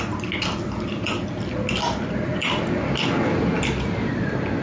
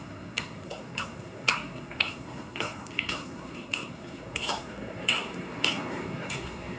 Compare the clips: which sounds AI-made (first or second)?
second